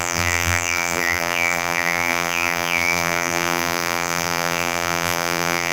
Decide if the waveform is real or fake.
fake